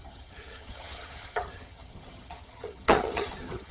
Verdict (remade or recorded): remade